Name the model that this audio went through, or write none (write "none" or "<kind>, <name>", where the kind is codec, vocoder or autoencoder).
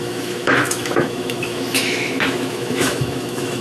autoencoder, DAC-VAE